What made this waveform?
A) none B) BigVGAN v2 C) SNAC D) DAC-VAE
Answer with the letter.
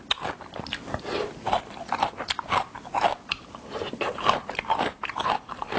A